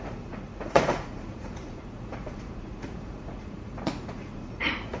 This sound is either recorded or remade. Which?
remade